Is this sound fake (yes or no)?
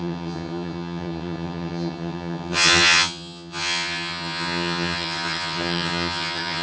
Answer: yes